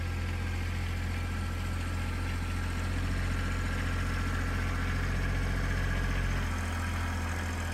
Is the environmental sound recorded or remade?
recorded